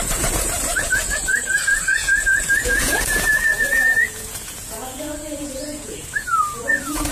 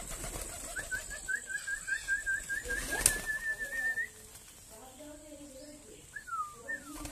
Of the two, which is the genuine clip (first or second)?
second